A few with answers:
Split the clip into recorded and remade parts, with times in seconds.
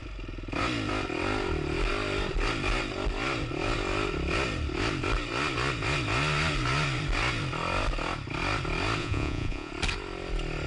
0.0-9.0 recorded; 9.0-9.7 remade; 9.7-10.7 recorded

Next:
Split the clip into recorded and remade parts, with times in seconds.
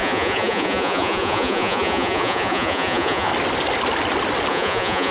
0.0-3.3 remade; 3.3-4.5 recorded; 4.5-5.1 remade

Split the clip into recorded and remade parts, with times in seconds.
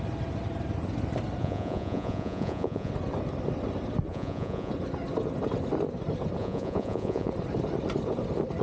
0.0-1.4 recorded; 1.4-2.9 remade; 2.9-4.1 recorded; 4.1-4.7 remade; 4.7-6.4 recorded; 6.4-7.3 remade; 7.3-8.6 recorded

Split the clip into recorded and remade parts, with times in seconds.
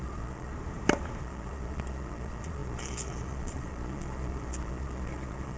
0.0-0.5 remade; 0.5-1.2 recorded; 1.2-5.6 remade